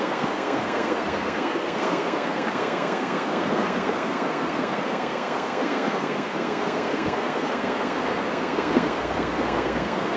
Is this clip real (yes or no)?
no